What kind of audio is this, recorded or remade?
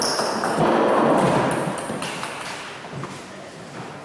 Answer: recorded